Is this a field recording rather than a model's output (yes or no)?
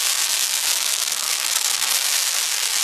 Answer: no